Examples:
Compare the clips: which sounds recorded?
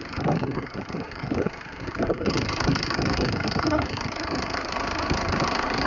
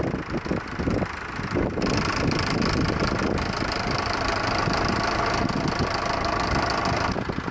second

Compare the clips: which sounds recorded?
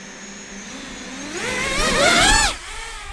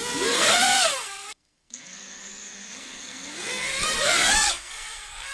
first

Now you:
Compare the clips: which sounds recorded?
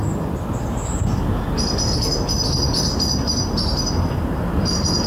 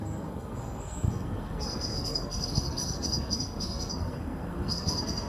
first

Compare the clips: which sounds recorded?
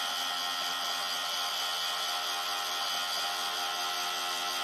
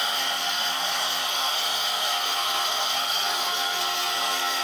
first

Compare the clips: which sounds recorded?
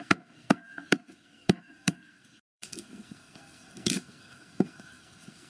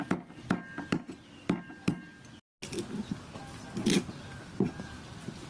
second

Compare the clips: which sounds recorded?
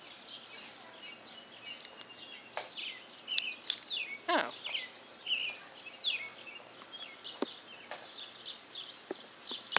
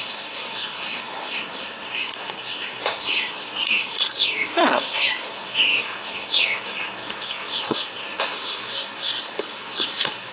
first